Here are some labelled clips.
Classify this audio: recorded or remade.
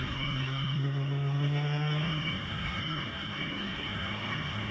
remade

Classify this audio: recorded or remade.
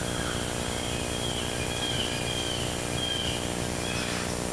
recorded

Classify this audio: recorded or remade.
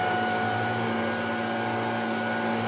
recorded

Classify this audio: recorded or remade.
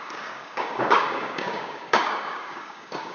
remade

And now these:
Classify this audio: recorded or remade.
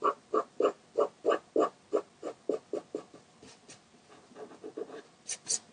recorded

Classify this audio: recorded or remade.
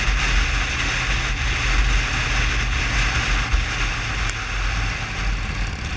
recorded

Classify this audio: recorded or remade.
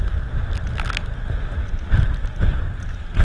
recorded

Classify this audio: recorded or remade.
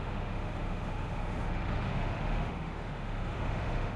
remade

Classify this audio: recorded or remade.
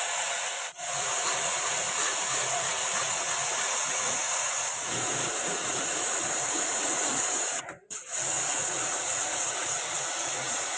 remade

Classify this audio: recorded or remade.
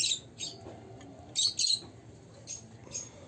recorded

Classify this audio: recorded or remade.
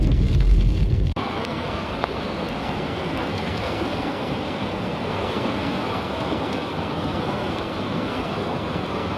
remade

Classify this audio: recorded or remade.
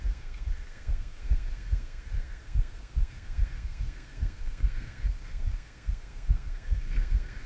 remade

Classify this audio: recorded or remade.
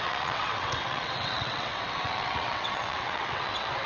remade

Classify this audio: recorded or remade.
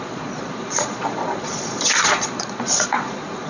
remade